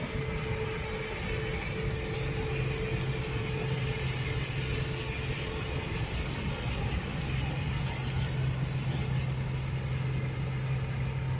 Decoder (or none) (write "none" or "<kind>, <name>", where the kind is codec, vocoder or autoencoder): none